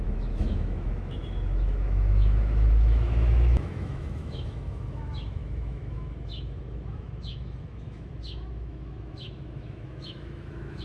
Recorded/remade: remade